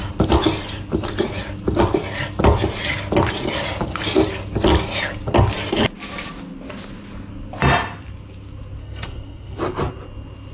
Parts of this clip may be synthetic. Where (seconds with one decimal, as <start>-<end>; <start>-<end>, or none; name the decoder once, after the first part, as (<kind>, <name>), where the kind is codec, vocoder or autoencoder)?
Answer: 8.8-9.6 (codec, SNAC)